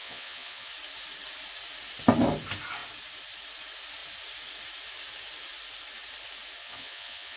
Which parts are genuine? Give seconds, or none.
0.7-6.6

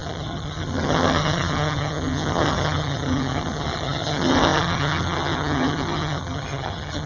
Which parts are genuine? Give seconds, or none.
none

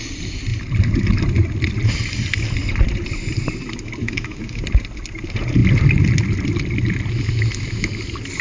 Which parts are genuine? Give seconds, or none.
0.0-4.0; 4.6-8.4

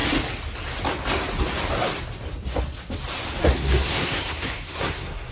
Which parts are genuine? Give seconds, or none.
0.0-3.4

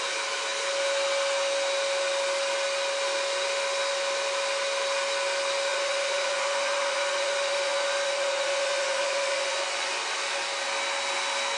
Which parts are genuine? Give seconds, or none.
0.0-5.7; 10.0-11.6

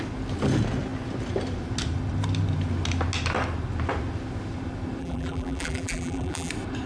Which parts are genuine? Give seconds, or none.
0.0-5.0; 6.5-6.9

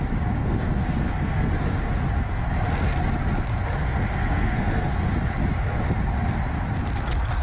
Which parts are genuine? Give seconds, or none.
0.0-0.4; 1.5-3.8; 5.1-7.4